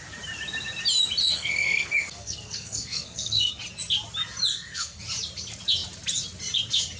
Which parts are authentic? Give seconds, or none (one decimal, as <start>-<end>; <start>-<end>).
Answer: 0.0-1.2; 3.5-4.5; 5.0-7.0